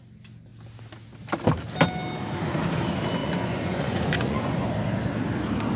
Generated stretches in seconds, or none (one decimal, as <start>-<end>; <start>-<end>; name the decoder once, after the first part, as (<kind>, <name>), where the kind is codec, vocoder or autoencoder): 3.2-4.7 (vocoder, Vocos)